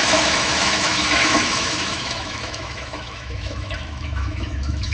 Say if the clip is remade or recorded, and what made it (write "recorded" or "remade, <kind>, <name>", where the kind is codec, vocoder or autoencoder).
remade, autoencoder, DAC-VAE